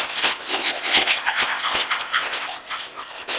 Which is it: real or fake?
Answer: fake